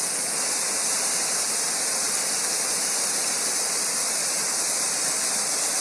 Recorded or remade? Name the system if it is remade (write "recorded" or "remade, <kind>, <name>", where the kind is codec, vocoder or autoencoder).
recorded